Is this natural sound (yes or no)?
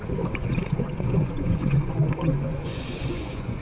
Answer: no